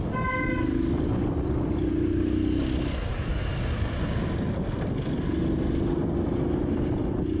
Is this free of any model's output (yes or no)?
yes